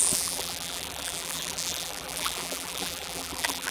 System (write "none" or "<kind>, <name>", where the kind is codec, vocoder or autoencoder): vocoder, BigVGAN v2